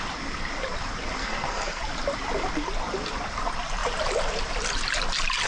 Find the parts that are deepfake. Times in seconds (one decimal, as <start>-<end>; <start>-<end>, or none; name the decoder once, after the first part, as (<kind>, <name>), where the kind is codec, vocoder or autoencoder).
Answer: 1.2-1.8 (codec, SNAC)

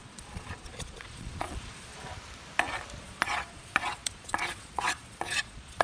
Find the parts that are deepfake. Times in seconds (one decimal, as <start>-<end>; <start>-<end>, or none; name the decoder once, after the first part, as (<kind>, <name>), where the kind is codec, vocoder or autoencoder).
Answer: 0.0-1.9 (vocoder, Vocos); 3.0-5.8

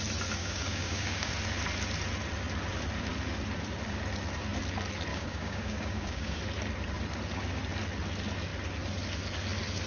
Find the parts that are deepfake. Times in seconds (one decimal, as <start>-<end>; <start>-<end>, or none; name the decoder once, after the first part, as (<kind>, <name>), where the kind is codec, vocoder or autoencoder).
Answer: 0.4-1.3 (codec, DAC); 5.1-6.4

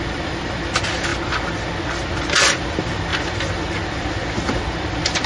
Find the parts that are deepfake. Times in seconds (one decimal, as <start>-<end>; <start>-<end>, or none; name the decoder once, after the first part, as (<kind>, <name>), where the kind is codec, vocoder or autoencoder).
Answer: 0.0-1.1 (vocoder, BigVGAN v2); 2.2-5.3

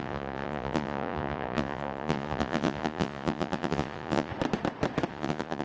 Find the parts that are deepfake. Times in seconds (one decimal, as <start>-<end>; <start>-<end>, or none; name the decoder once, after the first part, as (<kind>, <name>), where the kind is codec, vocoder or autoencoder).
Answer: 0.0-4.3 (vocoder, Vocos); 5.1-5.6